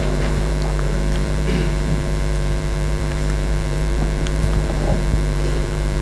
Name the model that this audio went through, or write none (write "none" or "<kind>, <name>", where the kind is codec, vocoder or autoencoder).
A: vocoder, BigVGAN v2